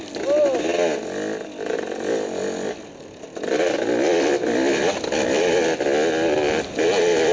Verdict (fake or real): real